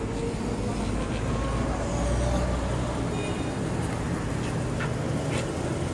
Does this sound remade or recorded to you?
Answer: recorded